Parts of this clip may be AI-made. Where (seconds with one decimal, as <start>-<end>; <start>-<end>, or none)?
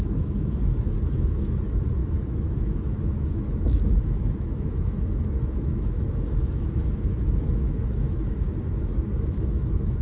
0.0-10.0